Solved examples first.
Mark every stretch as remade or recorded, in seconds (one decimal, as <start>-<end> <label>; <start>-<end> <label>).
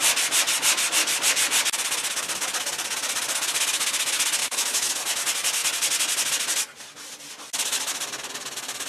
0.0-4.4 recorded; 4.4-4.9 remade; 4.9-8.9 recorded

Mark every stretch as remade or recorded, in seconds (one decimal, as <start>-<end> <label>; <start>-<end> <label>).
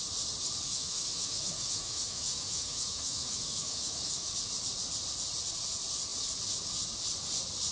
0.0-0.7 recorded; 0.7-4.3 remade; 4.3-7.7 recorded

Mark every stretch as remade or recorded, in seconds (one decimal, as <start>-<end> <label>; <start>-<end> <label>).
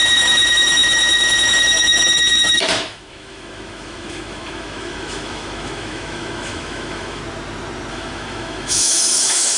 0.0-7.2 remade; 7.2-7.9 recorded; 7.9-9.6 remade